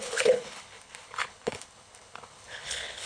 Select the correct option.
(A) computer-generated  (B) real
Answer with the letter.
A